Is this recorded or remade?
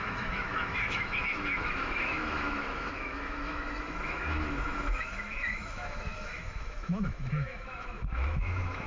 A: remade